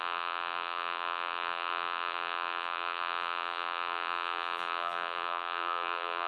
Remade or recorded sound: remade